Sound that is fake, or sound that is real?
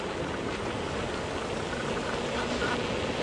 real